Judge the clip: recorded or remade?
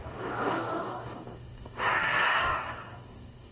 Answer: remade